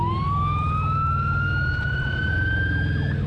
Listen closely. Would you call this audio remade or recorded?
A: recorded